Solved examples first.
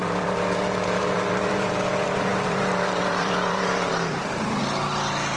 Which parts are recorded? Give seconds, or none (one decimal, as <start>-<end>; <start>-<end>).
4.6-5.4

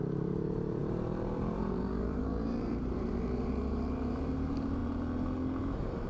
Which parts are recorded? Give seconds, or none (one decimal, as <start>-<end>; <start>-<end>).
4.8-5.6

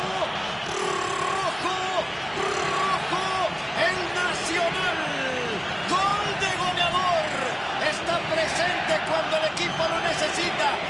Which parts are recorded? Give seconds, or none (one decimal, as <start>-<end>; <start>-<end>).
0.0-6.1; 6.8-10.9